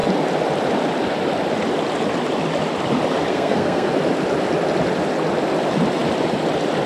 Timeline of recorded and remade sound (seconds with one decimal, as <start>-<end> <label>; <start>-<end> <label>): 0.0-3.3 recorded; 3.3-3.9 remade; 3.9-6.9 recorded